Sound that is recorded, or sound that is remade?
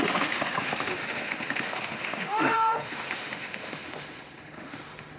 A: remade